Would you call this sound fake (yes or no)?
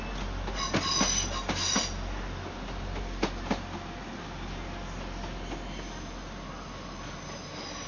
no